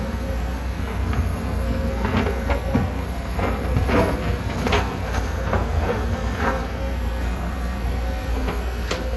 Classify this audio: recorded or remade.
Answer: remade